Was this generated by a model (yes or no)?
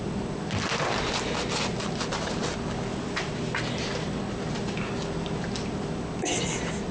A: no